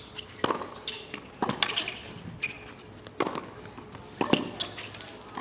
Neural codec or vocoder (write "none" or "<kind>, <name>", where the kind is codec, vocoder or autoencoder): none